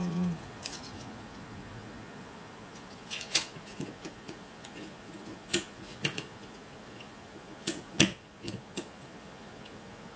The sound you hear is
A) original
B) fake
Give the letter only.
B